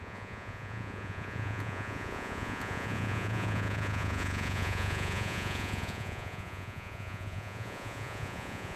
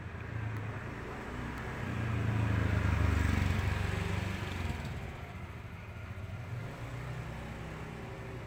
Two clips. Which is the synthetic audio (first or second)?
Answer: first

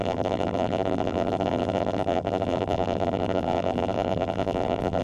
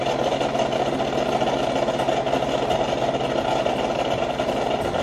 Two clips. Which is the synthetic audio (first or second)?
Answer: first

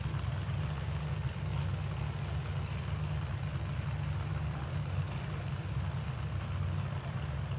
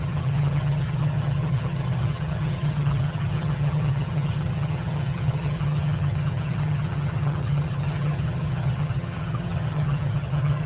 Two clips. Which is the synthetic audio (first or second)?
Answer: second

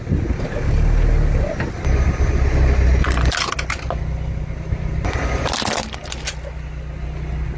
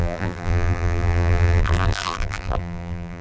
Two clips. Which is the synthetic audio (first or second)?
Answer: second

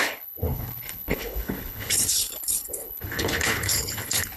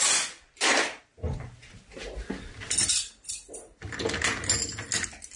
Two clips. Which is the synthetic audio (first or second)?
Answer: first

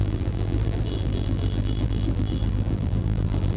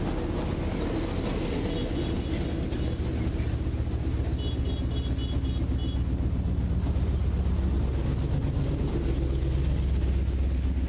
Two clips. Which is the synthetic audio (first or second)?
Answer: first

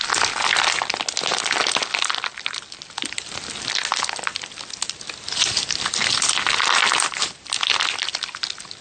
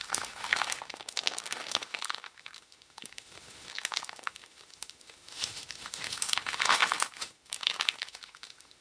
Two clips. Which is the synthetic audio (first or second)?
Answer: second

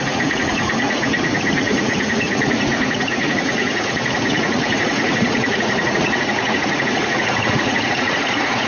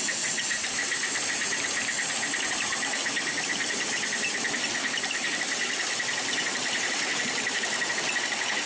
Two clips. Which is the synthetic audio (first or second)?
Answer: first